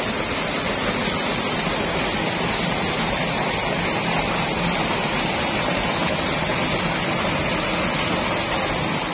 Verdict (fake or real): real